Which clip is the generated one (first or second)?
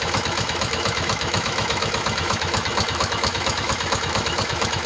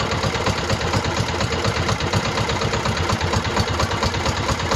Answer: first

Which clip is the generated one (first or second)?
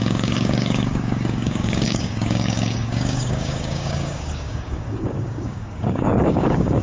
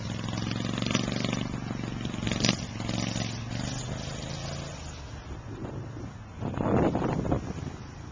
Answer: first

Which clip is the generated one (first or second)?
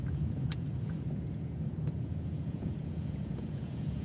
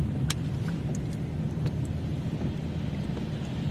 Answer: first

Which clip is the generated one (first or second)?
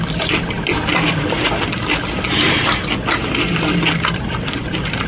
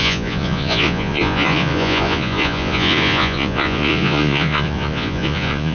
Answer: second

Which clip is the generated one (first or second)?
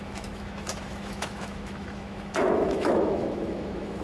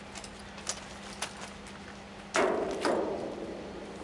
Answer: first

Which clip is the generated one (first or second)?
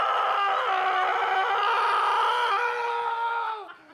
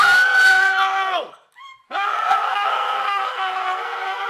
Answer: second